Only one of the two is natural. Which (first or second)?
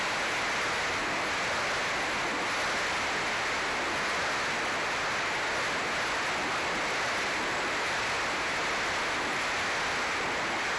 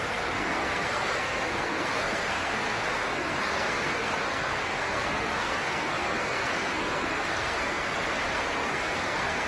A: first